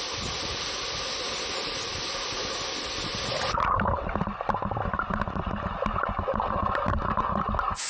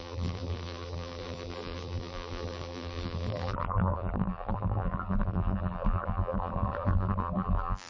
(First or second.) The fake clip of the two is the second